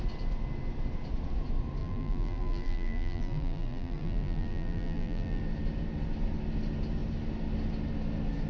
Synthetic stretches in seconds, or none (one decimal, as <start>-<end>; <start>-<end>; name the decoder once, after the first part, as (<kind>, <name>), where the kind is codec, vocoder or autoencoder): 1.8-5.4 (vocoder, BigVGAN v2)